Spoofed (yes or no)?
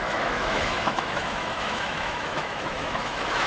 yes